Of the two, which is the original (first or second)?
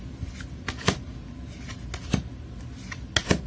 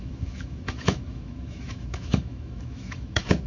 first